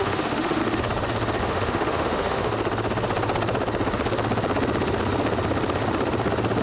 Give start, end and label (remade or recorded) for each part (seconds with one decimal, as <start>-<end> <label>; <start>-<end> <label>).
0.0-0.6 remade; 0.6-1.4 recorded; 1.4-2.5 remade; 2.5-6.6 recorded